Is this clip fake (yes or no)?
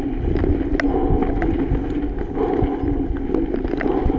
no